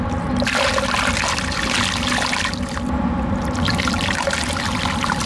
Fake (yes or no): no